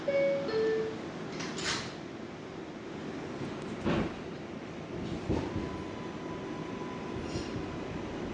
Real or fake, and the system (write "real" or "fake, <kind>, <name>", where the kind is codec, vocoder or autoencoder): real